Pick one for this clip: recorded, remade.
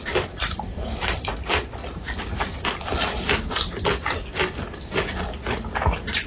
remade